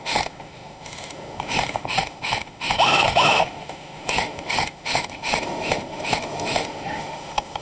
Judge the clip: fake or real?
fake